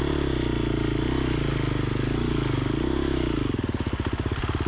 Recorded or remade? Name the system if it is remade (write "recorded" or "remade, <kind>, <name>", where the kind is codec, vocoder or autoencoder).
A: recorded